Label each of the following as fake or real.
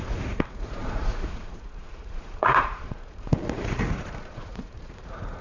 fake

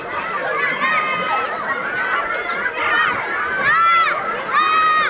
real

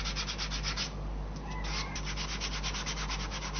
real